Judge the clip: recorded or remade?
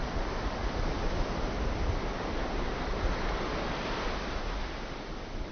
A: recorded